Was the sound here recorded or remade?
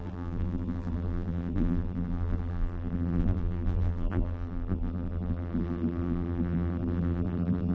remade